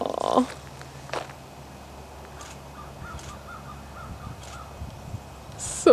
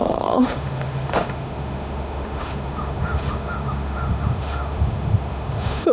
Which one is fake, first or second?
second